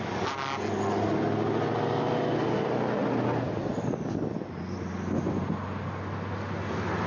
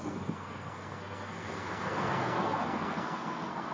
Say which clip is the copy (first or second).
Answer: second